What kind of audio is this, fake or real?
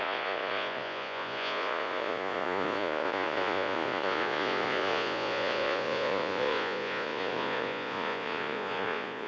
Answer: fake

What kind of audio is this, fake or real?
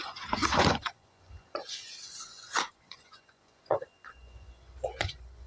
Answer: fake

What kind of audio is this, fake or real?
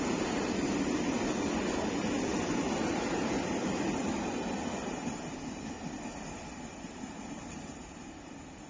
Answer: real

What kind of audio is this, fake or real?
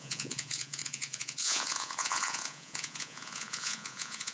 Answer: fake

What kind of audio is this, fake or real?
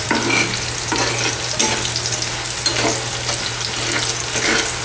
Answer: real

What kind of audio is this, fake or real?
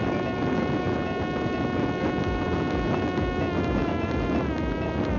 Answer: real